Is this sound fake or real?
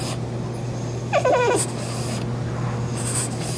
real